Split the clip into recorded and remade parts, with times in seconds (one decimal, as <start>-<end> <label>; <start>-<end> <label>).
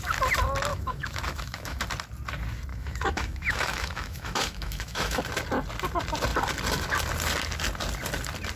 0.0-0.7 recorded; 0.7-1.8 remade; 1.8-2.7 recorded; 2.7-5.2 remade; 5.2-8.6 recorded